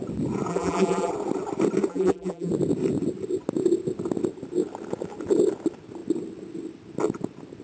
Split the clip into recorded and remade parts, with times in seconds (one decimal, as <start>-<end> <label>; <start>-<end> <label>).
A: 0.0-0.5 recorded; 0.5-1.1 remade; 1.1-1.9 recorded; 1.9-2.5 remade; 2.5-7.6 recorded